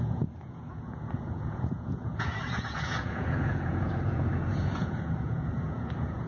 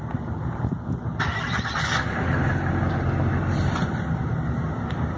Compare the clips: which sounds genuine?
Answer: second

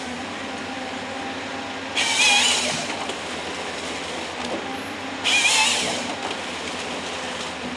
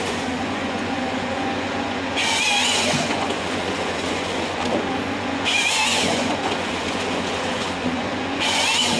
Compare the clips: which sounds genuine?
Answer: first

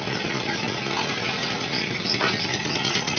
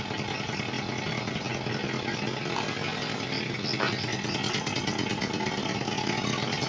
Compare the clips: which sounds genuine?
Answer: second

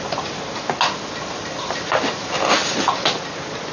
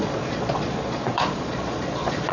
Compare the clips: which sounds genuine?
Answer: first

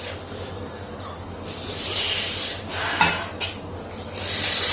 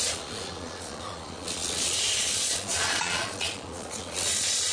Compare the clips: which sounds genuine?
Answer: first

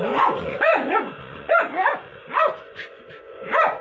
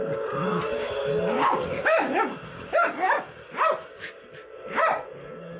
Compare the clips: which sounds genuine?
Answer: second